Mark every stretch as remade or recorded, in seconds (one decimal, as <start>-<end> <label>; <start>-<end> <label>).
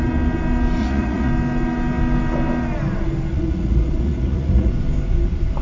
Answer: 0.0-0.8 recorded; 0.8-1.3 remade; 1.3-3.3 recorded; 3.3-4.7 remade; 4.7-5.6 recorded